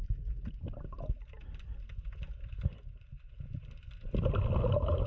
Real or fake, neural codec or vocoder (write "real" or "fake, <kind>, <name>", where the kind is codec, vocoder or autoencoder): real